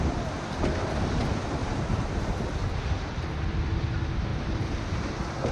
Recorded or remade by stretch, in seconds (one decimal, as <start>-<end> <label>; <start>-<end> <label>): 0.0-1.6 recorded; 1.6-2.5 remade; 2.5-4.3 recorded; 4.3-5.1 remade; 5.1-5.5 recorded

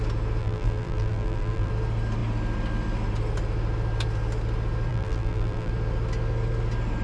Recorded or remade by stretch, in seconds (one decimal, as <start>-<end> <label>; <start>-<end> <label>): 0.0-0.4 recorded; 0.4-1.7 remade; 1.7-4.9 recorded; 4.9-5.7 remade; 5.7-7.0 recorded

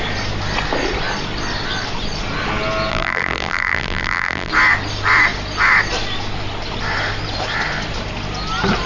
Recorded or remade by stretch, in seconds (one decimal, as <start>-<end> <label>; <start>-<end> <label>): 0.0-2.9 recorded; 2.9-4.5 remade; 4.5-8.9 recorded